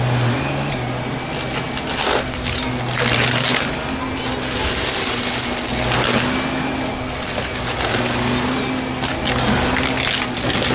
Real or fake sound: real